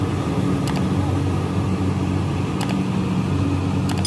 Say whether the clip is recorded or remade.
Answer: recorded